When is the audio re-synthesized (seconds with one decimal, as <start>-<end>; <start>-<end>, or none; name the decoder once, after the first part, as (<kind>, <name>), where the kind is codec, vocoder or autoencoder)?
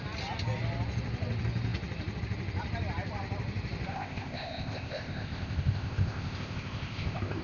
3.9-7.4 (codec, ZipCodec)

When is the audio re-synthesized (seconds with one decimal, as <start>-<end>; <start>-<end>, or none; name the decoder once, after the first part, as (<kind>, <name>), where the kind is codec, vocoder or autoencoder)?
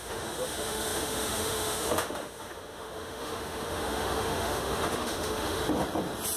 0.0-5.6 (autoencoder, DAC-VAE)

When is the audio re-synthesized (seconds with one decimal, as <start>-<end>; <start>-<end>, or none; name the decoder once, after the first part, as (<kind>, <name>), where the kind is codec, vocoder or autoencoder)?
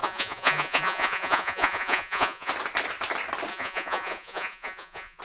0.0-2.5 (vocoder, Vocos); 3.5-5.2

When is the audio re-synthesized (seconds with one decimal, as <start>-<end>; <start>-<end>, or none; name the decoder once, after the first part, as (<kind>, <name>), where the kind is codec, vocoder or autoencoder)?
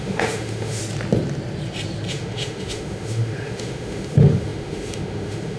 0.0-0.8 (autoencoder, DAC-VAE); 2.1-5.6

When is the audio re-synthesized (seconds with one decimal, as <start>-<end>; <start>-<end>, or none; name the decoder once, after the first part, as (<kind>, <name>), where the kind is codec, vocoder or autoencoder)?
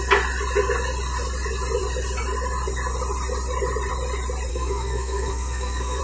4.5-6.0 (codec, SNAC)